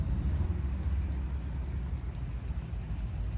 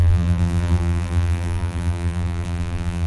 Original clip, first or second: first